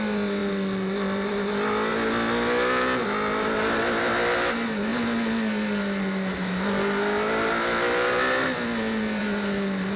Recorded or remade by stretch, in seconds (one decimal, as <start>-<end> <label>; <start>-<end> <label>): 0.0-10.0 recorded